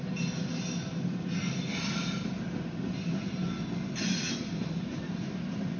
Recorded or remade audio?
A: recorded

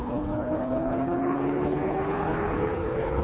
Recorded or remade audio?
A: remade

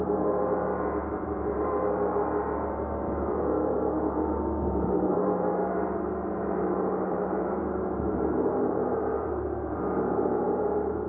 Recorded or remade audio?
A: remade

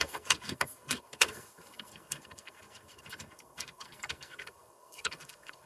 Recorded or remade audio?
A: remade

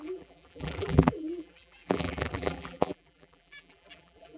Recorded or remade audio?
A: remade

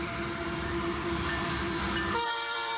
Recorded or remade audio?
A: remade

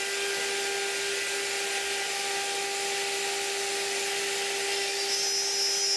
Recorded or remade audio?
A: recorded